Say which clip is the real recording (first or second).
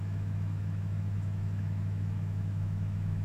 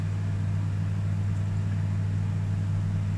second